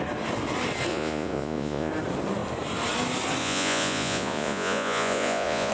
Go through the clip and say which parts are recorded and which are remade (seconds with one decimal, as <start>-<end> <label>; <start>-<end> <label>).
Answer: 0.0-0.9 recorded; 0.9-1.9 remade; 1.9-3.4 recorded; 3.4-5.7 remade